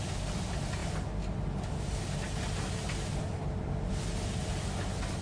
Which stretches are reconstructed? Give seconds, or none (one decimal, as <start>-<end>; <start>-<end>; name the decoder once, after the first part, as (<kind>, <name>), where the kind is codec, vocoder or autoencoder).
none

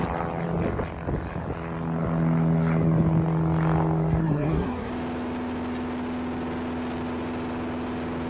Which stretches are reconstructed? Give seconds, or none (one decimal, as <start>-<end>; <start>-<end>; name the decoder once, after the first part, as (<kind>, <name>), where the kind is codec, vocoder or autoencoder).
4.2-4.9 (codec, SNAC)

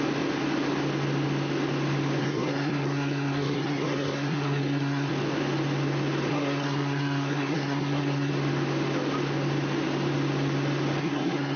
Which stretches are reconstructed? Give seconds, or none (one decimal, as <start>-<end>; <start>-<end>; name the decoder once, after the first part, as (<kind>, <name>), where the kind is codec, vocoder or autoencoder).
2.2-5.1 (codec, SNAC); 6.3-8.3; 11.0-11.6

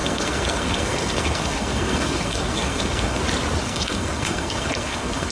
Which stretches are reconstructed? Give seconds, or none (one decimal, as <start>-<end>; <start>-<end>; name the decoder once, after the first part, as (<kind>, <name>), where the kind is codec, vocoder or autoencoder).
0.0-3.2 (codec, SNAC); 3.6-5.3

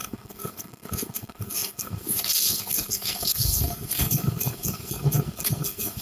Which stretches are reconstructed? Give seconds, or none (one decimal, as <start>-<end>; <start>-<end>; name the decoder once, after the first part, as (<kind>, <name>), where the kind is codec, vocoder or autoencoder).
0.0-6.0 (codec, SNAC)

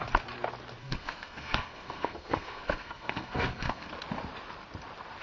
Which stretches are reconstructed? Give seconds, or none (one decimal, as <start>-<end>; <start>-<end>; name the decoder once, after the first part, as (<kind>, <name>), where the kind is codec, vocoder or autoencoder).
0.8-3.9 (codec, SNAC)

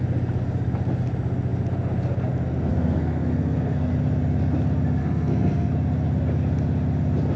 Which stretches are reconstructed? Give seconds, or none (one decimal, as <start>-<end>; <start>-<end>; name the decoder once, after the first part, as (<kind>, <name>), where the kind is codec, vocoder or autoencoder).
2.7-3.9 (codec, SNAC); 5.0-5.7